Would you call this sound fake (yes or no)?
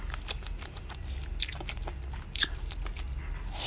no